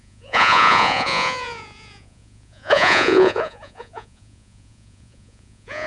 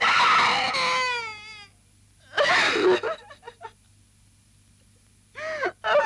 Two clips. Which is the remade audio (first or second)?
first